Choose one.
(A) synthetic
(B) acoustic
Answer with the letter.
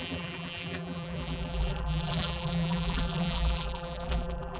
A